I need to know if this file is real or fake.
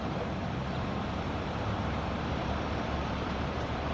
fake